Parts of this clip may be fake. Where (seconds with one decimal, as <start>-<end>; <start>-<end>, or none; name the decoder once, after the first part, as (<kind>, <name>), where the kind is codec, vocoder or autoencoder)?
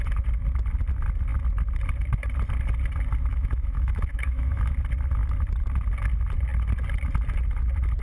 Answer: 3.3-4.7 (autoencoder, DAC-VAE)